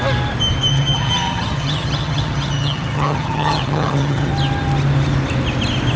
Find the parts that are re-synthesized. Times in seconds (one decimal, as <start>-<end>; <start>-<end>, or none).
0.7-4.3

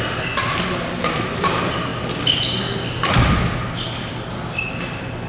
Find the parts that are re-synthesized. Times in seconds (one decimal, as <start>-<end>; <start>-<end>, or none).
none

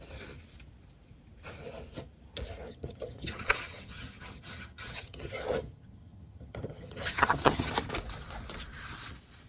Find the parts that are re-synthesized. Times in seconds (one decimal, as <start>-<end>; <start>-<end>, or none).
2.7-7.7

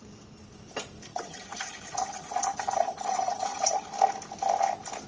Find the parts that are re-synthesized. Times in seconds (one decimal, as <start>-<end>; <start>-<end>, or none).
1.1-3.9

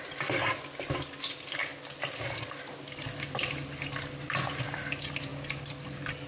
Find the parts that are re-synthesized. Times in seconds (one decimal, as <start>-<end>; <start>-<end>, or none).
none

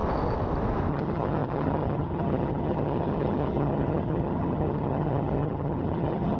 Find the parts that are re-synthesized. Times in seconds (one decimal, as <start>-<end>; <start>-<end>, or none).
0.9-6.4

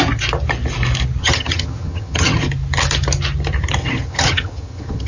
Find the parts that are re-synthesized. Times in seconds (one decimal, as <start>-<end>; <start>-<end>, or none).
1.2-2.4; 3.8-5.1